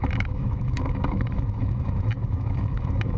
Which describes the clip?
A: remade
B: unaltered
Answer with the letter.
A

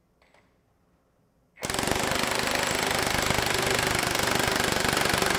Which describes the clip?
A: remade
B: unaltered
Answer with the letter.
B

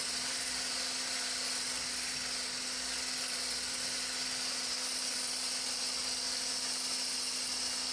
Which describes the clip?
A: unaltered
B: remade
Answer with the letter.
A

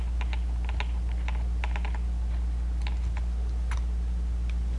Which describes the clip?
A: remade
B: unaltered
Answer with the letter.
B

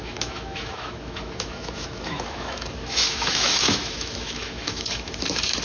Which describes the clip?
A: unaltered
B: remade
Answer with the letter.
B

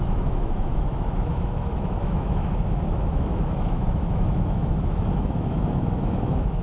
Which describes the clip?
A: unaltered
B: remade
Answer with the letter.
B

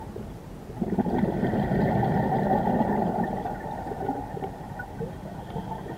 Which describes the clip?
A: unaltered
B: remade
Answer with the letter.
A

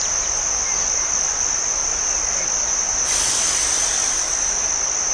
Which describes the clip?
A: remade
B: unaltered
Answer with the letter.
B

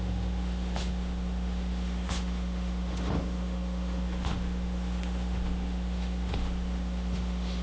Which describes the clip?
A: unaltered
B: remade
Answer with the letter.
B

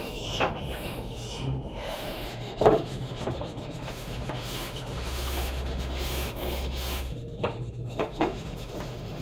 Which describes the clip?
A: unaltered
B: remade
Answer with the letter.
B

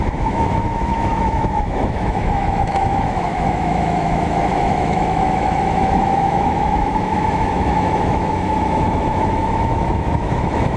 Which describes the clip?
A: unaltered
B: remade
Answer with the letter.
B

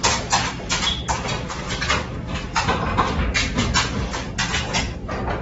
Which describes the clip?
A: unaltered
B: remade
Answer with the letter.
A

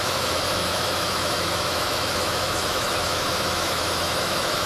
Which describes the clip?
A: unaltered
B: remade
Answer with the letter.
B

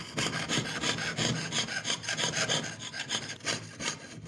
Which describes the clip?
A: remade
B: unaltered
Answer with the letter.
B